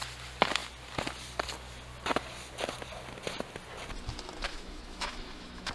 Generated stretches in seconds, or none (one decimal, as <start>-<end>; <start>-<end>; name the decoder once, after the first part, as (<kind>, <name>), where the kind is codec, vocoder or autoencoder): 4.5-5.7 (autoencoder, DAC-VAE)